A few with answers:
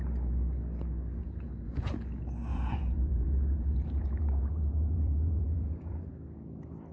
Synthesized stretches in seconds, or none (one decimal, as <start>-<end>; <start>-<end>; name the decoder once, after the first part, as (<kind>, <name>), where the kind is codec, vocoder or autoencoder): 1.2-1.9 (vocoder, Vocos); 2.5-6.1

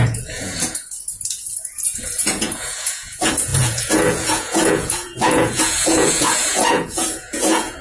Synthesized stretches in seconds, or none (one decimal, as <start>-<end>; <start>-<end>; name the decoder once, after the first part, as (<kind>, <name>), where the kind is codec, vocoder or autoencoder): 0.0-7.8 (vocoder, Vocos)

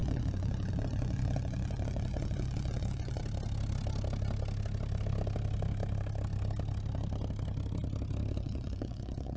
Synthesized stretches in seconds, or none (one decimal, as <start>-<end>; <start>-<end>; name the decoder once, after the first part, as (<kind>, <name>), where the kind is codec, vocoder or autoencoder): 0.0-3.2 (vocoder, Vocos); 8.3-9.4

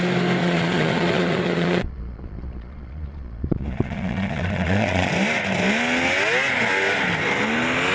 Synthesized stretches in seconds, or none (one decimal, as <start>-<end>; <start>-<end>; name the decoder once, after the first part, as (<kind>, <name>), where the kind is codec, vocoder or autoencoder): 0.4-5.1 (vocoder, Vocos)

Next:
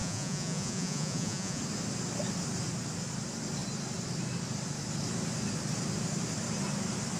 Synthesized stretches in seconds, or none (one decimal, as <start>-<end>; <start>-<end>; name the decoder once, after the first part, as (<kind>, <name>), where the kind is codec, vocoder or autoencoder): 0.0-1.6 (vocoder, Vocos)

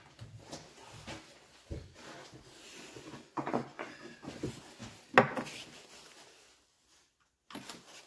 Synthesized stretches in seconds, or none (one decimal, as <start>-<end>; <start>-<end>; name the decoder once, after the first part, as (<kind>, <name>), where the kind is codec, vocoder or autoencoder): 2.7-4.0 (vocoder, Vocos)

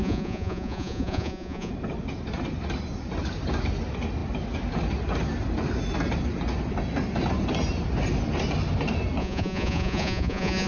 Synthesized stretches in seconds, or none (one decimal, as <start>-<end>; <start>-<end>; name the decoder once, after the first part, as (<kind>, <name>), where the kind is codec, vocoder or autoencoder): 0.0-1.7 (vocoder, Vocos); 9.2-10.7

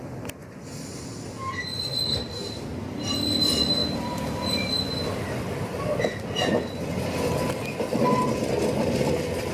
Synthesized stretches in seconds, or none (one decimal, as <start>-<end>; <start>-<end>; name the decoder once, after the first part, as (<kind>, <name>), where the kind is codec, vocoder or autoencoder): none